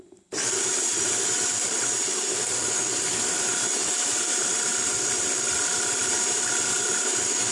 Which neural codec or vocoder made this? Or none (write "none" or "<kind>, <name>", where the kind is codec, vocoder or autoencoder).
none